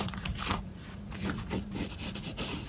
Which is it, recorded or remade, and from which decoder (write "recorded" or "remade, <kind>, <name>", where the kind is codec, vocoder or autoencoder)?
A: remade, vocoder, Vocos